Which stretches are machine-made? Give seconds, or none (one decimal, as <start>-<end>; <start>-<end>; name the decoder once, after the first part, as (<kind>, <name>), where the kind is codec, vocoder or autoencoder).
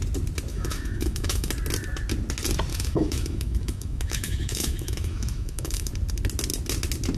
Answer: 0.5-1.5 (autoencoder, DAC-VAE); 2.7-5.9